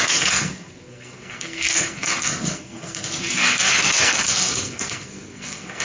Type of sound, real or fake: fake